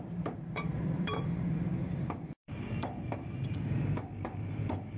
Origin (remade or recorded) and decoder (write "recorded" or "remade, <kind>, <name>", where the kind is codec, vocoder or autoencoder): remade, vocoder, BigVGAN v2